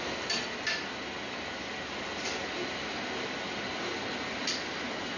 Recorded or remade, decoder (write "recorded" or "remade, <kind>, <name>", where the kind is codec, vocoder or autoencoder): recorded